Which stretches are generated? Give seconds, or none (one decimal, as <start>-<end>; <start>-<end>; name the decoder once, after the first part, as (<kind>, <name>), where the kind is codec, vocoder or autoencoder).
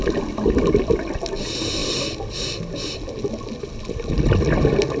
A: none